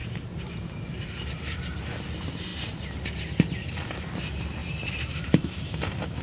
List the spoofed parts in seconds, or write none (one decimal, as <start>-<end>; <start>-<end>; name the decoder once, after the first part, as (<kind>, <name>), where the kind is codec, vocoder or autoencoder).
0.0-2.0 (vocoder, BigVGAN v2); 4.6-5.4